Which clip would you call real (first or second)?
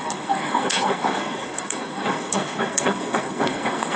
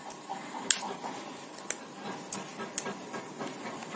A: second